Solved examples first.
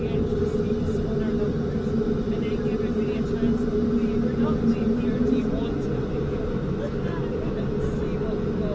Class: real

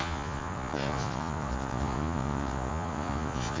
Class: fake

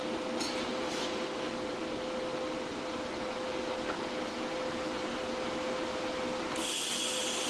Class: real